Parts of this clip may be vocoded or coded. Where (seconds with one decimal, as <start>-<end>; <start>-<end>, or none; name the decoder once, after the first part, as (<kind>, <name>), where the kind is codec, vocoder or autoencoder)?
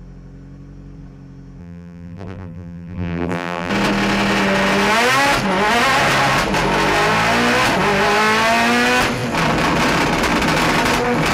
1.6-3.7 (vocoder, BigVGAN v2)